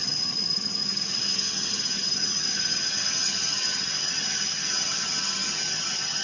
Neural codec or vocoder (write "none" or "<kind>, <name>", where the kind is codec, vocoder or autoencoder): vocoder, HiFi-GAN